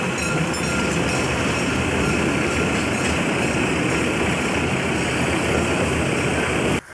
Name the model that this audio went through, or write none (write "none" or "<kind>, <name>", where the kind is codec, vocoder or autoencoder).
none